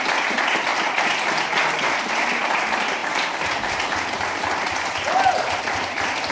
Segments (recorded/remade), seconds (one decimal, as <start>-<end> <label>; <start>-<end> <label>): 0.0-6.3 recorded